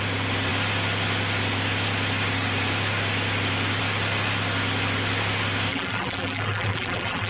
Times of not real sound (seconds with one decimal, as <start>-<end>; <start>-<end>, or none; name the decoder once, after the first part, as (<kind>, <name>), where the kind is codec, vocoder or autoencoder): 5.7-7.3 (vocoder, BigVGAN v2)